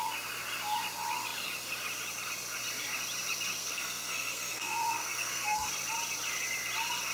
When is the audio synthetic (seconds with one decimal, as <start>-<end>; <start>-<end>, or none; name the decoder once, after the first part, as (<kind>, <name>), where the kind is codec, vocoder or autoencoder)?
3.6-5.7 (codec, SNAC)

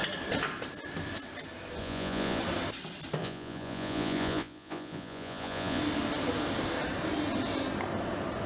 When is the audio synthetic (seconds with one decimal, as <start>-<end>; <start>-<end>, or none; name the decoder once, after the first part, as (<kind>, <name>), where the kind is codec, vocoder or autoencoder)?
1.8-2.4 (vocoder, Vocos); 3.2-5.8